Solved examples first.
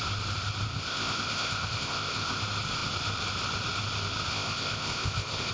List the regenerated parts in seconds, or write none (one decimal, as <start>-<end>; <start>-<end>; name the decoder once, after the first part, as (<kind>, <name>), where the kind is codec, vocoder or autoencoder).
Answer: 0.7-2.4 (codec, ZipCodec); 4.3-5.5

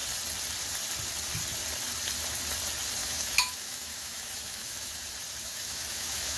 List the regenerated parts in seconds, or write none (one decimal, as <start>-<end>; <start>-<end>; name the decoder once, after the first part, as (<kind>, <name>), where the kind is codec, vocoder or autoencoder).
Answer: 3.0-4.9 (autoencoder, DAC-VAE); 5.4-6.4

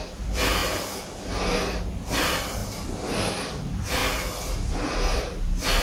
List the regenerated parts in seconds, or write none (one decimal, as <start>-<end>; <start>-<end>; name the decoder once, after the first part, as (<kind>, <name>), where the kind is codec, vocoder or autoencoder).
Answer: 0.0-0.6 (vocoder, BigVGAN v2); 1.8-2.6; 3.3-4.0; 4.7-5.8

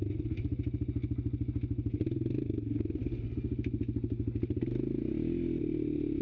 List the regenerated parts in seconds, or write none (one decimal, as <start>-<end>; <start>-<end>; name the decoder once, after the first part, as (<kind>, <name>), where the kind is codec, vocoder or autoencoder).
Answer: none